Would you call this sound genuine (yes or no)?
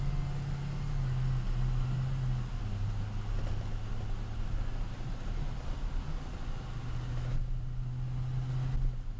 yes